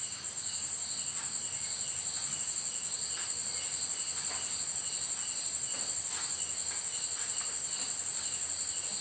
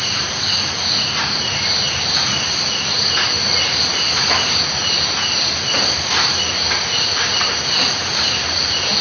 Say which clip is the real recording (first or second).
first